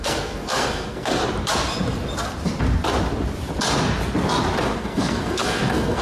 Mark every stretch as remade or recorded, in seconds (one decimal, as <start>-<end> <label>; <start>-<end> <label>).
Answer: 0.0-1.2 remade; 1.2-4.8 recorded; 4.8-6.0 remade